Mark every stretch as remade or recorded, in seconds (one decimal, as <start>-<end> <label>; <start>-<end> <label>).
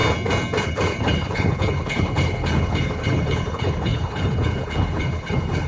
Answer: 0.0-0.6 recorded; 0.6-5.7 remade